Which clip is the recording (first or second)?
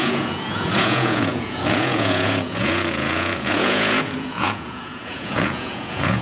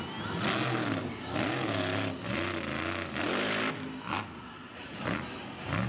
second